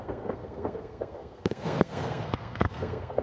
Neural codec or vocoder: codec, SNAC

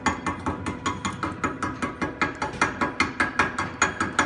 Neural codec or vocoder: none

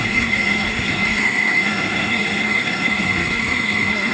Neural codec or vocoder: codec, SNAC